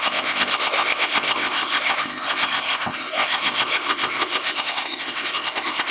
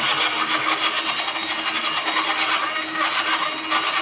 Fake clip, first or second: first